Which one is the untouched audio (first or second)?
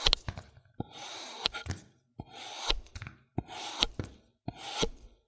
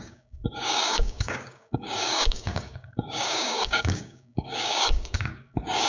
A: first